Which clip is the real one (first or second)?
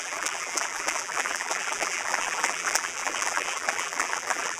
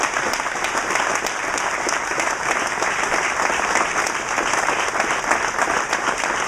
second